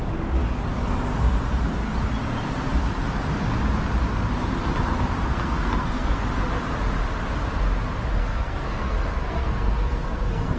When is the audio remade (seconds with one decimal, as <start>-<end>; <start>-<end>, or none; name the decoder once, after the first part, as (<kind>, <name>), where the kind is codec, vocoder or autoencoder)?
5.3-6.2 (codec, SNAC); 8.2-10.6